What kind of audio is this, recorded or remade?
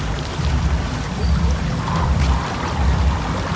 remade